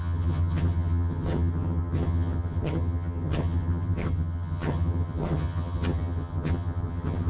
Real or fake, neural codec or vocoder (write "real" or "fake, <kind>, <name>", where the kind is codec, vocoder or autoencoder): fake, vocoder, HiFi-GAN